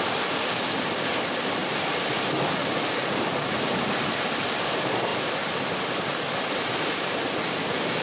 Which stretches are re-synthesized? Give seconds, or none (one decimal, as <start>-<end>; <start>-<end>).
none